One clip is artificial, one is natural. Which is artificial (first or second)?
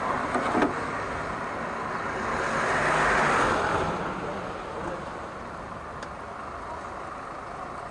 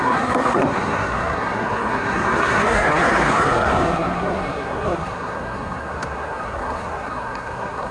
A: second